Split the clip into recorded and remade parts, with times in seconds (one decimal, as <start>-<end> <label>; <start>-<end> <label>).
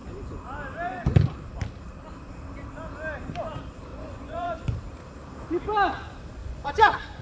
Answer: 0.0-3.9 recorded; 3.9-4.8 remade; 4.8-6.4 recorded; 6.4-7.2 remade